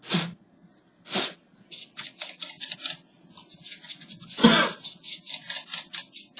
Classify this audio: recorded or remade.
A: recorded